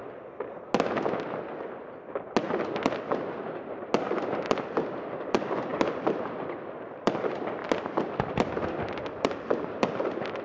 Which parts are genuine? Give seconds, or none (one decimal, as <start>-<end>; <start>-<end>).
0.0-4.3; 7.6-8.1